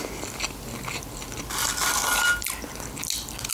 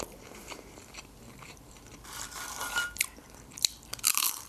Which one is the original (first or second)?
first